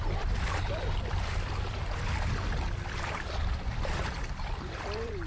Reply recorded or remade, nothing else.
remade